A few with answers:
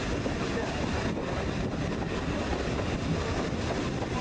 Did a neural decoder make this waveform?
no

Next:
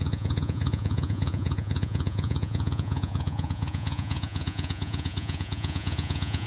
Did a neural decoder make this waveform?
yes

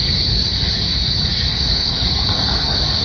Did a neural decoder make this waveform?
yes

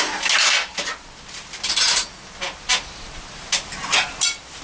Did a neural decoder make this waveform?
no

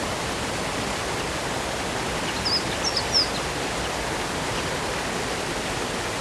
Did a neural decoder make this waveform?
no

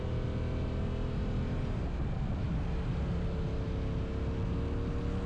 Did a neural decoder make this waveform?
no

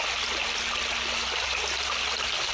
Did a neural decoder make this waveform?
no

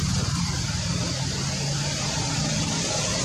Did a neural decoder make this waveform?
no